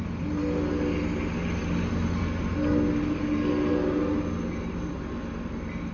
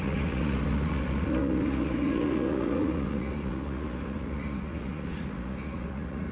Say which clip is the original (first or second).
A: first